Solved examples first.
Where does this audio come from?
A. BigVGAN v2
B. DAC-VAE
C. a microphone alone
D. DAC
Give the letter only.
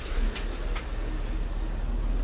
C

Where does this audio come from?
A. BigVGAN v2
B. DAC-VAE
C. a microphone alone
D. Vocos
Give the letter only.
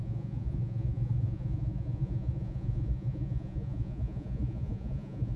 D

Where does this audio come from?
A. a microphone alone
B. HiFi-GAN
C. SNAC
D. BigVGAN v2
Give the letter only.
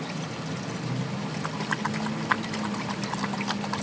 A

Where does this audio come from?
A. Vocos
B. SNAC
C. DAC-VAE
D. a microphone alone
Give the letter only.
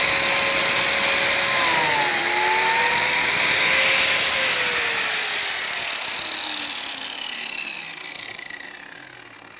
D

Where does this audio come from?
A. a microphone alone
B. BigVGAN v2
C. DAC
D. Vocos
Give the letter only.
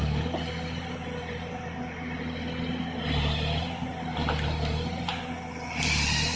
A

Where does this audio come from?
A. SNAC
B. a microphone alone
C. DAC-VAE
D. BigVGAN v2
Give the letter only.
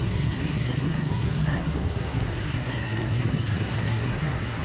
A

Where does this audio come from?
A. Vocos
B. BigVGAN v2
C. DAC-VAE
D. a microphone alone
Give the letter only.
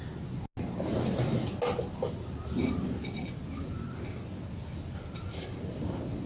D